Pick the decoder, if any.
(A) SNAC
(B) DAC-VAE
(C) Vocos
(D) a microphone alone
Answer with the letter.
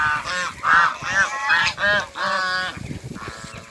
D